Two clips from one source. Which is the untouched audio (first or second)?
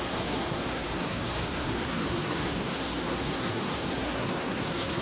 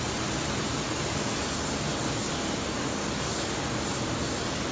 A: second